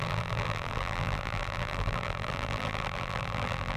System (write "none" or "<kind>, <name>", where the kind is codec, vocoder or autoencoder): vocoder, BigVGAN v2